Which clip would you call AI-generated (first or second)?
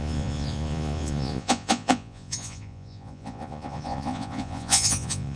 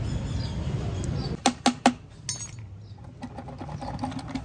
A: first